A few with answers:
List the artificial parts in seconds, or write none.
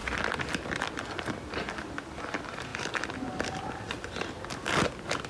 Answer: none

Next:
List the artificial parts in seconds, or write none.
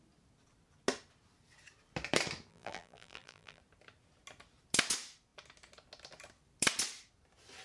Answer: 2.5-3.6 (vocoder, BigVGAN v2)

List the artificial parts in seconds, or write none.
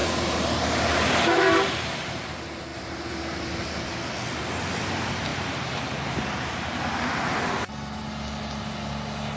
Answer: 0.0-2.3 (vocoder, BigVGAN v2); 5.3-6.8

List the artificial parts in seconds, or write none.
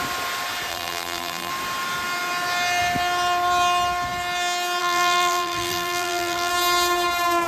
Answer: 0.7-1.5 (vocoder, BigVGAN v2); 4.8-6.5